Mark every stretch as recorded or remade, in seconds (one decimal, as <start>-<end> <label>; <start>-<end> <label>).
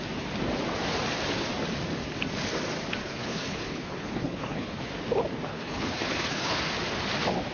0.0-3.0 recorded; 3.0-4.8 remade; 4.8-5.5 recorded; 5.5-6.6 remade; 6.6-7.5 recorded